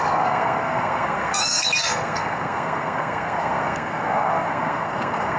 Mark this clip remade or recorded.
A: remade